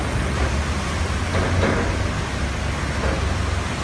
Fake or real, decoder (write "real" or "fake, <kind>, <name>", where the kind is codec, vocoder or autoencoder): real